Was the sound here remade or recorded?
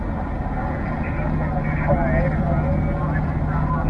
recorded